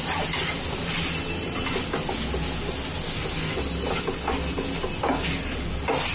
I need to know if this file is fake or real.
real